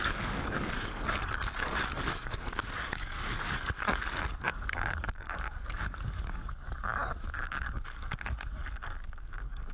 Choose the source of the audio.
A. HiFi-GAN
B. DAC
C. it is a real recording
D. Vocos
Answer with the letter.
B